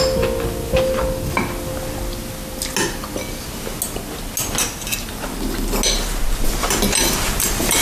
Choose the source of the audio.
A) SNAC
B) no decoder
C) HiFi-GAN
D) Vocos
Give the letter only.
B